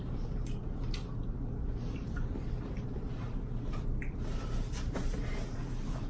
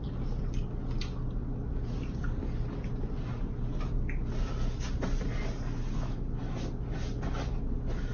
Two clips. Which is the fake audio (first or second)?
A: first